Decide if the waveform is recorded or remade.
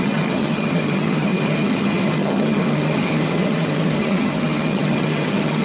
remade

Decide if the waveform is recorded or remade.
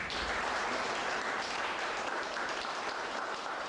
remade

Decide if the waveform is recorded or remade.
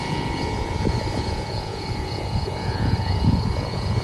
remade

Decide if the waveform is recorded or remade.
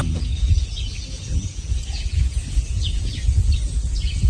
remade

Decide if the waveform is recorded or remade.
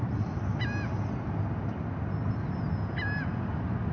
recorded